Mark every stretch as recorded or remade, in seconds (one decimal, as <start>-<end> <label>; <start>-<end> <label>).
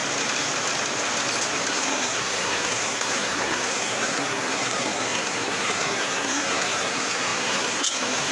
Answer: 0.0-1.7 recorded; 1.7-8.3 remade